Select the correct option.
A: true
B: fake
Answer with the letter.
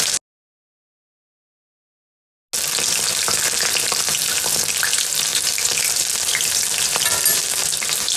A